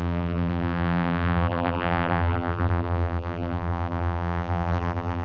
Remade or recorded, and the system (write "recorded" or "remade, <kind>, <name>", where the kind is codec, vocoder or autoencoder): remade, vocoder, BigVGAN v2